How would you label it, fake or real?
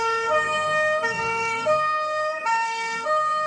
fake